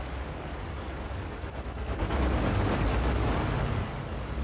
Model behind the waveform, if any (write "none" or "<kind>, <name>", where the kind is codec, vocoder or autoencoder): codec, DAC